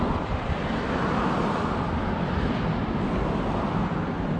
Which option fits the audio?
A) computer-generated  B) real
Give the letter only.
B